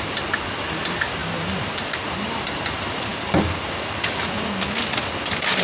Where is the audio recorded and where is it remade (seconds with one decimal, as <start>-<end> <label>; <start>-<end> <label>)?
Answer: 0.0-5.6 recorded